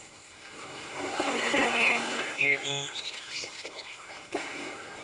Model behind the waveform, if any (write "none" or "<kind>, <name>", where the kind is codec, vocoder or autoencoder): codec, SNAC